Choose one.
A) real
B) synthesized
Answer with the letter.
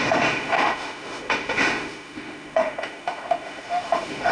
B